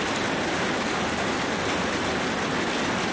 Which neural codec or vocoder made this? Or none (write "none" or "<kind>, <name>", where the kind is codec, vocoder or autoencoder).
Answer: none